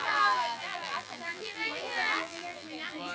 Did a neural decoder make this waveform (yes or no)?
yes